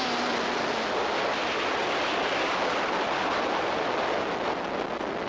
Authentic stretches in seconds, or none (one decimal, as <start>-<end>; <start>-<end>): 0.0-5.3